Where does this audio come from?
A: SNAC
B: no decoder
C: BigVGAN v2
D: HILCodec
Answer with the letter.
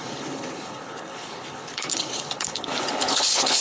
D